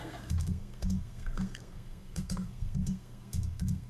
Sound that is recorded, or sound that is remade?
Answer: remade